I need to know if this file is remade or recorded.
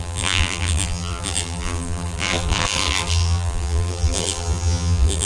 remade